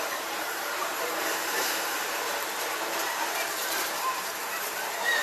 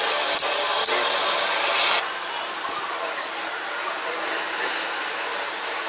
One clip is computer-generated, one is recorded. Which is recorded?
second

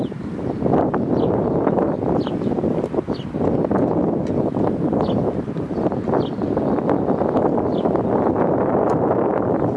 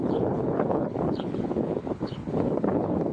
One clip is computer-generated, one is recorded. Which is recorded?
first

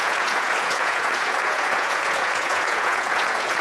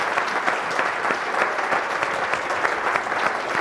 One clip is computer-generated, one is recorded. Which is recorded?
second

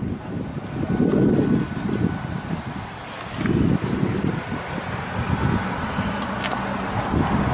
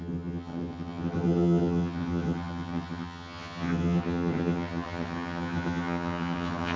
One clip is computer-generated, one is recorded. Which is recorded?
first